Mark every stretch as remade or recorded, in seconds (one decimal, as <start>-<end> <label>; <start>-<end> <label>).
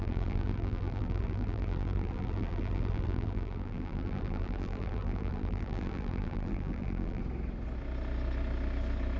0.0-7.2 remade; 7.2-9.2 recorded